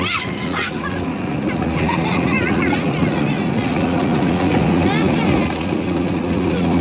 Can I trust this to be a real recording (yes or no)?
no